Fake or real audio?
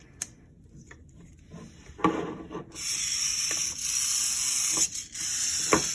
real